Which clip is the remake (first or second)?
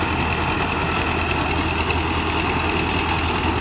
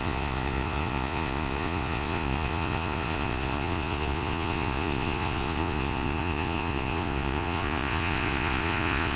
second